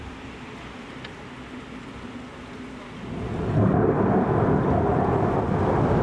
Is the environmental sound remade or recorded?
recorded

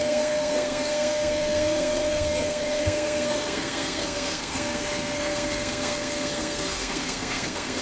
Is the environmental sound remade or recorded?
remade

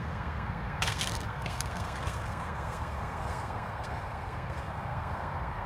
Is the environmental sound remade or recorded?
remade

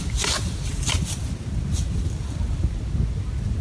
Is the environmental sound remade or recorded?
recorded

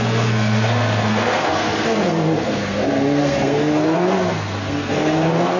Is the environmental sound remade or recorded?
remade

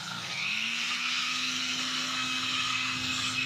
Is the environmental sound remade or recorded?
remade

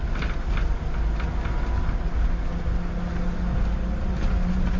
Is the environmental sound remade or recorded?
recorded